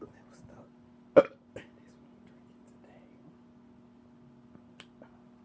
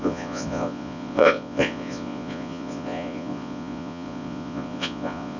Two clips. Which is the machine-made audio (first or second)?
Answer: second